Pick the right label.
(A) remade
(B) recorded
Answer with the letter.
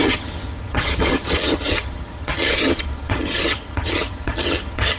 A